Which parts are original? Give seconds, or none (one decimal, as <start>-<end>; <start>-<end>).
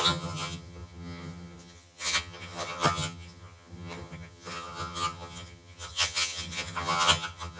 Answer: none